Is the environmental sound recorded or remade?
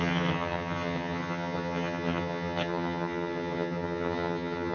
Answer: remade